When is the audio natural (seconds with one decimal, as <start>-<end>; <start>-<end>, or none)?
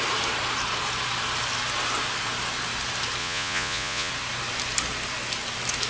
0.0-3.2; 4.1-5.9